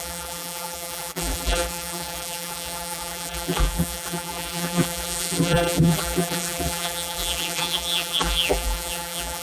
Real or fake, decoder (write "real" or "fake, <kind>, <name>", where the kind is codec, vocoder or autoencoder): fake, vocoder, BigVGAN v2